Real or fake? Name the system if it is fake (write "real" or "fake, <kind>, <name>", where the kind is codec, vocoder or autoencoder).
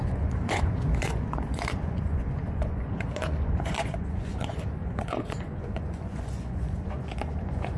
fake, vocoder, Vocos